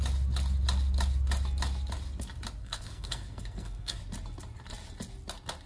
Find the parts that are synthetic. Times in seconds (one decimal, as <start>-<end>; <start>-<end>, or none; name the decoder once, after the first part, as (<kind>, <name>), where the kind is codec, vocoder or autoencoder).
2.6-4.0 (codec, SNAC)